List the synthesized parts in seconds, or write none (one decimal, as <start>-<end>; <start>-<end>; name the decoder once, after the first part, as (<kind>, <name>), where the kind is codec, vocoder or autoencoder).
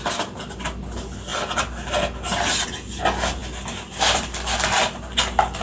3.4-5.6 (vocoder, BigVGAN v2)